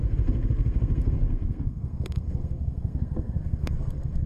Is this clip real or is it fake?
fake